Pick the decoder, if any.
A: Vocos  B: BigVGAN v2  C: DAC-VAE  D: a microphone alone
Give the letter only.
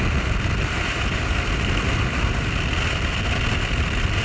D